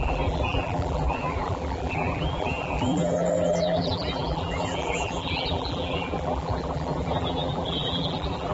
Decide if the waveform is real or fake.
fake